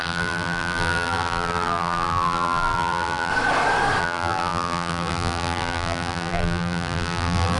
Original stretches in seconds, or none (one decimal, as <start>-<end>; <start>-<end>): 3.3-4.0